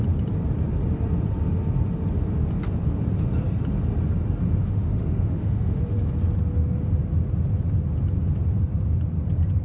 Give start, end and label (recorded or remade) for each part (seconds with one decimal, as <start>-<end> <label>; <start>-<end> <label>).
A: 0.0-4.6 recorded; 4.6-5.8 remade; 5.8-9.6 recorded